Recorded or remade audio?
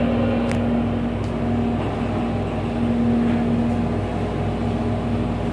recorded